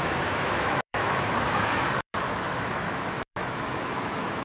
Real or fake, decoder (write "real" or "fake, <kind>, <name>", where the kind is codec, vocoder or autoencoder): fake, autoencoder, DAC-VAE